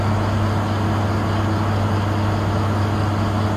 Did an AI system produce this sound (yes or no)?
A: no